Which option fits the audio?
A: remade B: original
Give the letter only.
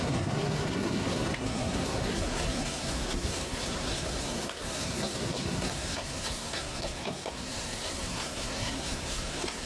A